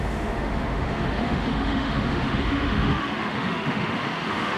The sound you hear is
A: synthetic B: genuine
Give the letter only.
A